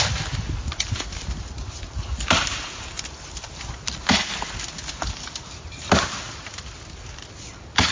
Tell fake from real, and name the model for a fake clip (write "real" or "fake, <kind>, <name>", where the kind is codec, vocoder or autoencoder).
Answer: real